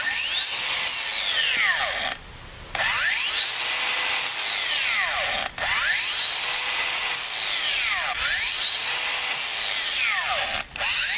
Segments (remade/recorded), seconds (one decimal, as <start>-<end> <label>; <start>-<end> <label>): 0.0-11.2 recorded